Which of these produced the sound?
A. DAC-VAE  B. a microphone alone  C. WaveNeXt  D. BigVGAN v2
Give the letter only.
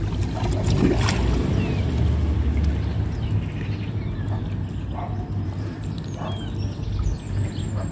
B